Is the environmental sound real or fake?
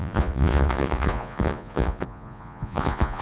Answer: fake